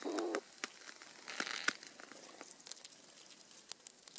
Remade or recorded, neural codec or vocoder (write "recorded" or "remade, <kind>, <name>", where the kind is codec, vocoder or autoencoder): recorded